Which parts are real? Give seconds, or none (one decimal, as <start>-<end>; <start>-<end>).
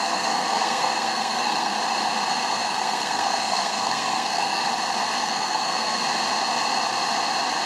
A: 1.7-2.3; 4.6-5.2; 6.0-7.7